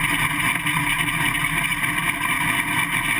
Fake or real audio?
real